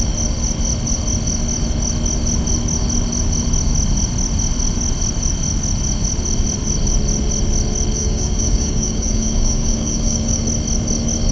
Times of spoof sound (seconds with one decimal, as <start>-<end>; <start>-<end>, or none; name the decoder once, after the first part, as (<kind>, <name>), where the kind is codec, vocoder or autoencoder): 8.0-10.4 (codec, DAC)